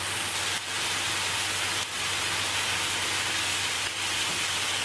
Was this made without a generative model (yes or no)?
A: yes